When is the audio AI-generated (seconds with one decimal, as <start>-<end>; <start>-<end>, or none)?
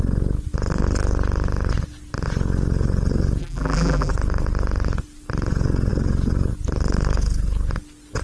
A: 3.4-4.1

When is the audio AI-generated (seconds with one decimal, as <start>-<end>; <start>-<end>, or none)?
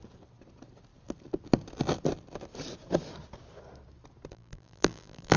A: 4.3-5.4